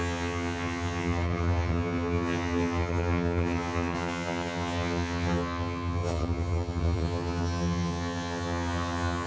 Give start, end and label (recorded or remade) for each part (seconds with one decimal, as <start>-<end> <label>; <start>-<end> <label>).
0.0-9.3 remade